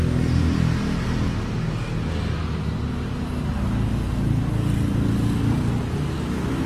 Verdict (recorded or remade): recorded